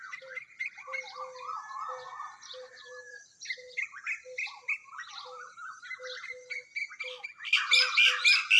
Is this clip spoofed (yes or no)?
no